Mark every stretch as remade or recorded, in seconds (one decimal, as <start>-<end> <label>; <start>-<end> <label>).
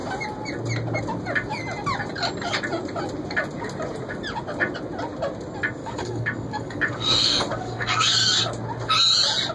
0.0-5.8 recorded; 5.8-8.4 remade; 8.4-9.5 recorded